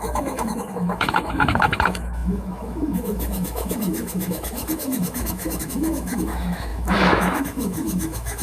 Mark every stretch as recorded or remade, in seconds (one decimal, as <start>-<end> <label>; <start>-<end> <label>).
0.0-8.4 remade